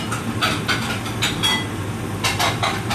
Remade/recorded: recorded